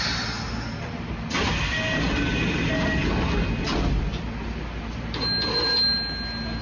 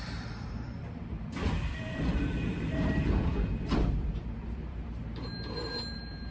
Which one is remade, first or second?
second